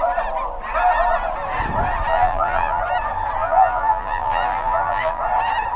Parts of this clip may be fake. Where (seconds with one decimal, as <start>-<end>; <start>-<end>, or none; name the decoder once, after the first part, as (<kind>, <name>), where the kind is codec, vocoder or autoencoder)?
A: 2.1-2.8 (vocoder, BigVGAN v2); 3.4-5.2